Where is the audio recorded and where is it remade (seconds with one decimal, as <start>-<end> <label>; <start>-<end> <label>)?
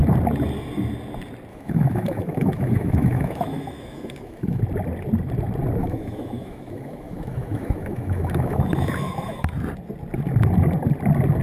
0.0-1.5 recorded; 1.5-4.6 remade; 4.6-5.8 recorded; 5.8-9.5 remade; 9.5-11.4 recorded